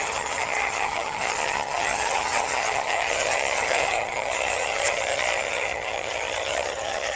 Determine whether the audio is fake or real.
fake